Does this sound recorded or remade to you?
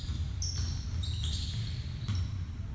recorded